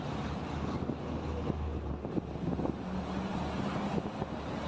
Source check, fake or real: real